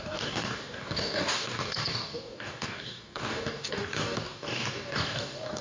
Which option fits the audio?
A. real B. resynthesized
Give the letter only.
B